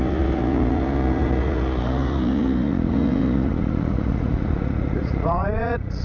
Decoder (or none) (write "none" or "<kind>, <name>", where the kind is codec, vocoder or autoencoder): vocoder, Vocos